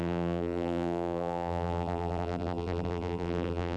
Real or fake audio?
fake